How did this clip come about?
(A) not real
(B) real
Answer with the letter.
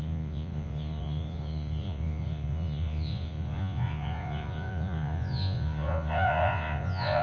A